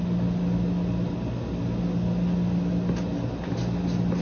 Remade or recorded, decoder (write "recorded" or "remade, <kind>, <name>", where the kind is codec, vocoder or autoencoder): recorded